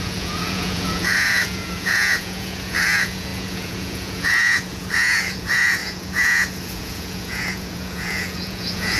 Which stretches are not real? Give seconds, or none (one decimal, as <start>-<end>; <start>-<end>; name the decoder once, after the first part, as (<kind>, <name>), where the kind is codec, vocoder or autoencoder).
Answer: 0.0-9.0 (vocoder, Vocos)